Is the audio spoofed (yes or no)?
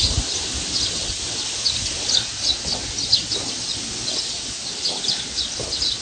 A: no